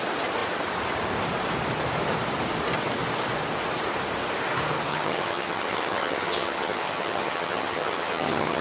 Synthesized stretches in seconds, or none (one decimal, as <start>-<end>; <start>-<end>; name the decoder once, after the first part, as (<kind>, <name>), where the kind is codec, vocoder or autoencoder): 4.9-8.6 (vocoder, HiFi-GAN)